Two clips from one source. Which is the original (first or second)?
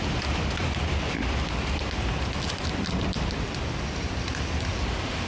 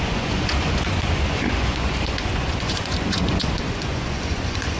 first